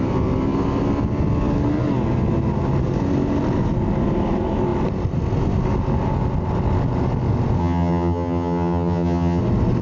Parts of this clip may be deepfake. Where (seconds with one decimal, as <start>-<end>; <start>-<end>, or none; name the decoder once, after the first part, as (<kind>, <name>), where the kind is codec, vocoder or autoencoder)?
7.6-9.4 (vocoder, HiFi-GAN)